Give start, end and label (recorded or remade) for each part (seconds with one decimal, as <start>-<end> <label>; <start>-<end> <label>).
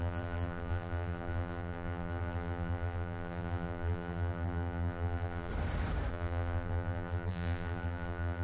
0.0-5.5 remade; 5.5-6.1 recorded; 6.1-8.4 remade